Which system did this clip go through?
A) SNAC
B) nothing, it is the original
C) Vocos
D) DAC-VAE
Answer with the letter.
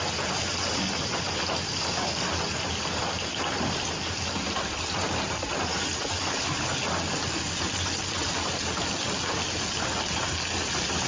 B